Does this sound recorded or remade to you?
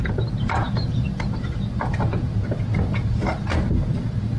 remade